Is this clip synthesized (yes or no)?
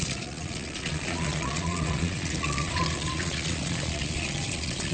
yes